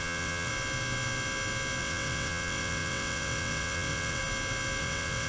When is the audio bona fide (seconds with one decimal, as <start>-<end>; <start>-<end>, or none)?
0.5-1.8; 4.2-4.8